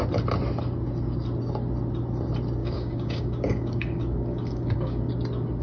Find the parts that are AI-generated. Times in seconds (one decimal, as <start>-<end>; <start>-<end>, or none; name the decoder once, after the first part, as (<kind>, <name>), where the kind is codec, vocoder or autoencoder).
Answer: 2.6-5.1 (codec, DAC)